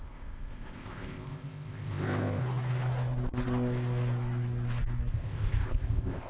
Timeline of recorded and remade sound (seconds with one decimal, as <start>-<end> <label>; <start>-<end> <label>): 0.0-2.4 remade; 2.4-5.1 recorded; 5.1-6.3 remade